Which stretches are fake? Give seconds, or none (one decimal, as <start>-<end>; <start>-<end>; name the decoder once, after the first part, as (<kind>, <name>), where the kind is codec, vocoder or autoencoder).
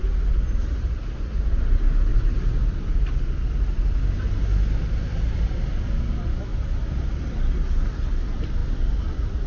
2.1-2.9 (vocoder, BigVGAN v2)